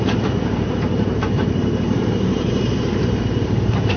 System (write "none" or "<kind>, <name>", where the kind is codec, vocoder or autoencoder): vocoder, BigVGAN v2